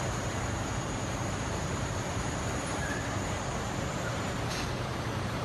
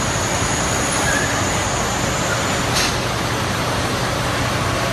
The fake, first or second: first